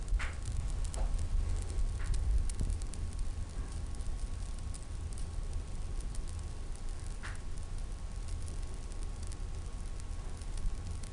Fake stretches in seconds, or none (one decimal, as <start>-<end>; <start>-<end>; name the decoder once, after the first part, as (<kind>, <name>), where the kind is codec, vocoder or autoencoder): 0.0-0.6 (vocoder, BigVGAN v2); 1.8-11.1

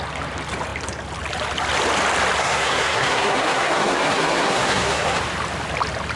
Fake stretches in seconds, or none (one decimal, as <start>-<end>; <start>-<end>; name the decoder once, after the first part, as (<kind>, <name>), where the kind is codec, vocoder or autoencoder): 2.4-5.2 (codec, SNAC)

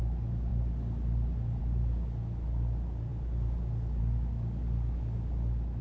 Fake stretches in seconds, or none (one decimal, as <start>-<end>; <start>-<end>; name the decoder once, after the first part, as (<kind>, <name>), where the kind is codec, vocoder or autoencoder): none

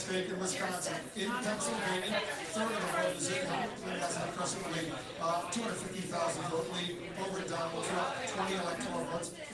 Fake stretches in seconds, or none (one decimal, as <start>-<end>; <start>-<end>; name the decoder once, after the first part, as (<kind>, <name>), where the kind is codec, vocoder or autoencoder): none

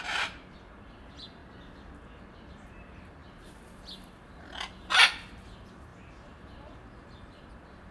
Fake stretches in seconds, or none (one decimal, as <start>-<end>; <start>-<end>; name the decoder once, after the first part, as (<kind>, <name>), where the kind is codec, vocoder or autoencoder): 0.0-1.4 (vocoder, BigVGAN v2); 2.5-7.9

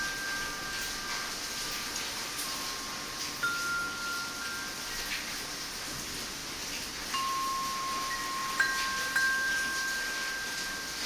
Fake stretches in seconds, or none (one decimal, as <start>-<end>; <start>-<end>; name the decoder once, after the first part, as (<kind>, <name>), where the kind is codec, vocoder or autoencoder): none